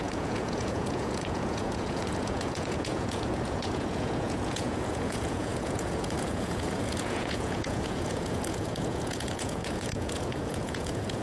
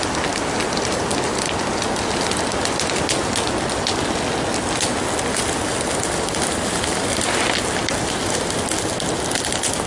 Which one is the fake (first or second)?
first